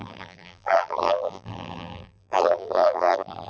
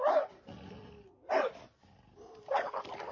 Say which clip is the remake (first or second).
first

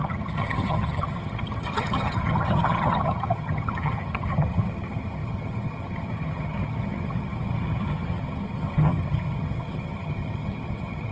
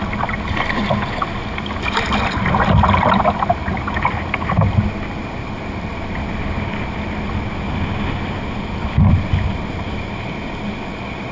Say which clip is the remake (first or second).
first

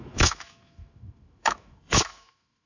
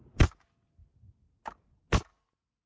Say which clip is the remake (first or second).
first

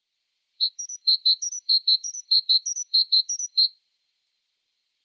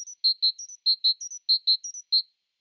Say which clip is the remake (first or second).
first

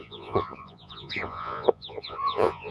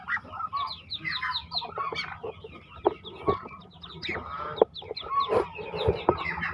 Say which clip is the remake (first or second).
first